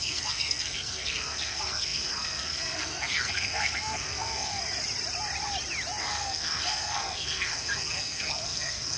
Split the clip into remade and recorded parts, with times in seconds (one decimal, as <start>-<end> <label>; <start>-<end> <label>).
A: 0.0-4.6 remade; 4.6-6.0 recorded; 6.0-9.0 remade